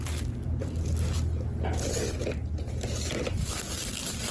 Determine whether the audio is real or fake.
real